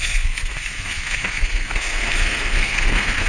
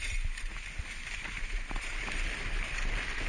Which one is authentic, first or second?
second